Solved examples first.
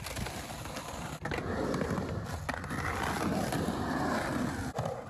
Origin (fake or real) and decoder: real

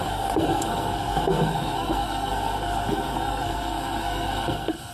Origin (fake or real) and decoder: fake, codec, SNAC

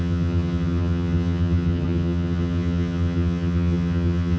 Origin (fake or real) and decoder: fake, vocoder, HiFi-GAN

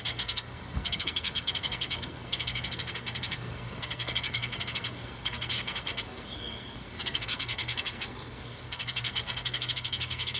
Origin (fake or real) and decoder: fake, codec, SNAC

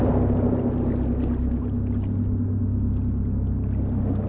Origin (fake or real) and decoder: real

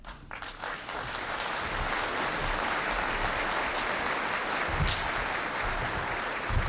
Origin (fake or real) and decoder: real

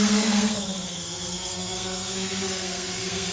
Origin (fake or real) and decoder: fake, codec, SNAC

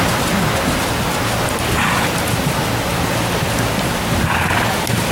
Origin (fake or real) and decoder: real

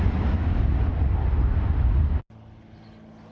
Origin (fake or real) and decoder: real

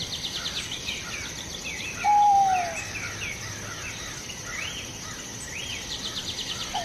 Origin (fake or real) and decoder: real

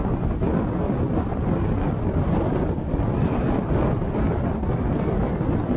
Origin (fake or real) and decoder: real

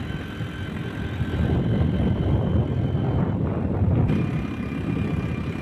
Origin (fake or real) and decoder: real